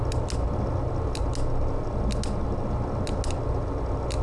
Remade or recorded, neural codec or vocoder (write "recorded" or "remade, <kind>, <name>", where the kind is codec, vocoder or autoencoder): recorded